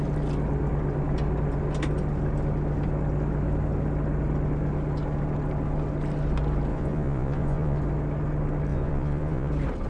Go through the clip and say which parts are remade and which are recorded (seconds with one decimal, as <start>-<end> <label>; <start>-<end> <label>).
0.0-6.7 recorded; 6.7-7.8 remade; 7.8-8.7 recorded; 8.7-9.5 remade; 9.5-9.9 recorded